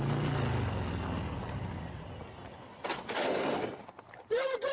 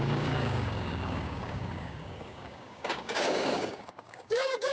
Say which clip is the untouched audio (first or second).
first